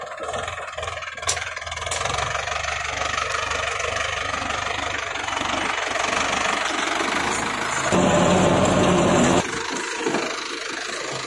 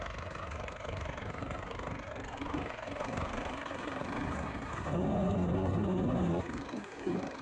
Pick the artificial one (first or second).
second